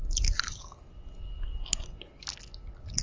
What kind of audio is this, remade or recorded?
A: recorded